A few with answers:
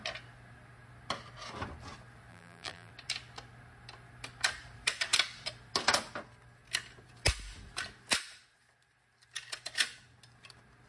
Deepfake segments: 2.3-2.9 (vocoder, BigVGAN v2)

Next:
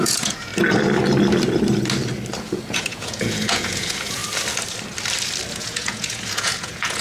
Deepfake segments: 0.0-0.5 (vocoder, Vocos); 2.4-4.2; 5.5-7.0

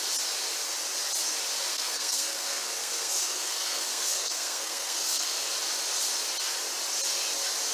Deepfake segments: 1.7-5.4 (codec, SNAC)

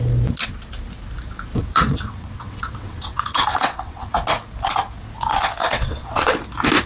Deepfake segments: 1.6-4.2 (vocoder, WaveNeXt); 5.6-6.3

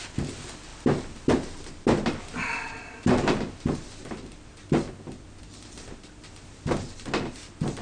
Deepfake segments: none